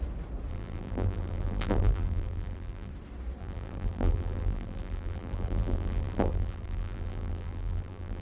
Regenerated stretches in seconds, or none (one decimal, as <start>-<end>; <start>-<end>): 0.5-2.9; 3.4-8.2